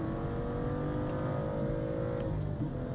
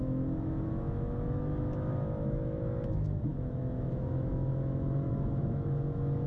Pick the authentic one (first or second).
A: first